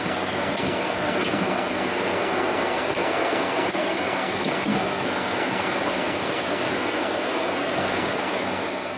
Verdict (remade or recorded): remade